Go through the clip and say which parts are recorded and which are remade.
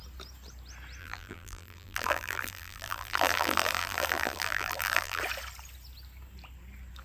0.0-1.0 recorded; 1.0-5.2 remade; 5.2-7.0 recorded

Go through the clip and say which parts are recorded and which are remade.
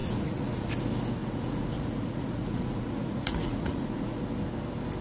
0.0-0.7 remade; 0.7-1.2 recorded; 1.2-4.2 remade; 4.2-5.0 recorded